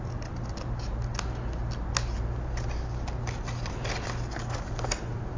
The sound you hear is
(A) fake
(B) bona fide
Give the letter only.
B